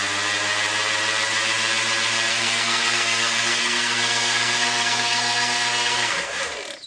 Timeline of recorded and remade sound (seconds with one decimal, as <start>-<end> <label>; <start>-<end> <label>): 0.0-2.3 recorded; 2.3-6.4 remade; 6.4-6.9 recorded